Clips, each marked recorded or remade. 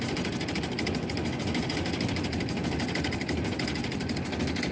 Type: recorded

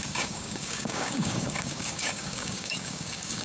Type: remade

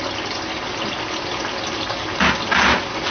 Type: recorded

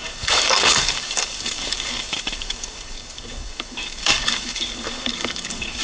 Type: remade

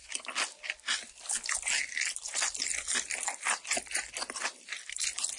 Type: recorded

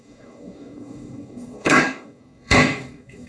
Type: remade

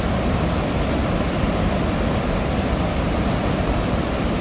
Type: recorded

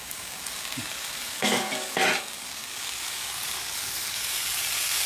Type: remade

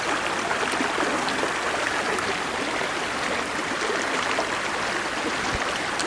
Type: recorded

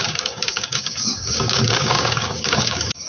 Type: remade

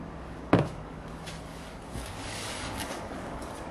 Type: remade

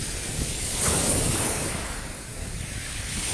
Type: remade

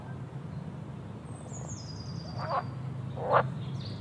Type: recorded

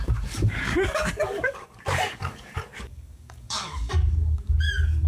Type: remade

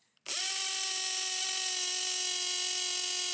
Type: recorded